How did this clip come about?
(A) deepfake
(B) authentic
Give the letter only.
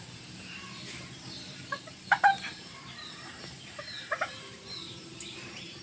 A